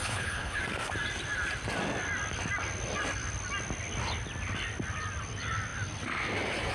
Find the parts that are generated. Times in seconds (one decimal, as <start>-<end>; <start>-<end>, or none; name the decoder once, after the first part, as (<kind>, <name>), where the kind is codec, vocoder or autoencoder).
0.0-0.6 (codec, HILCodec)

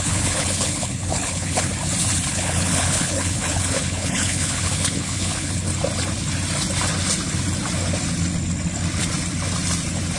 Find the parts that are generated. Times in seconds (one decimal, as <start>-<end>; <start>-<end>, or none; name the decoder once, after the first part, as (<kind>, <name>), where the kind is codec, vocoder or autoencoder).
0.0-1.7 (codec, HILCodec); 2.3-5.7

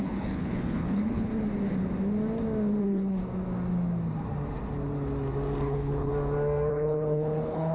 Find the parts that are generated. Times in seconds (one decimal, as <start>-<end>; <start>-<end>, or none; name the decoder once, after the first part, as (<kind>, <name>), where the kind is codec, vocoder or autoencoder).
0.0-1.3 (codec, HILCodec); 2.8-3.2; 5.6-6.1; 6.7-7.7